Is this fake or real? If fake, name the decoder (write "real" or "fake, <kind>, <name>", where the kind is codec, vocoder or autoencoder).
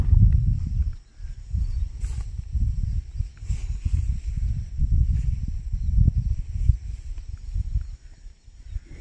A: real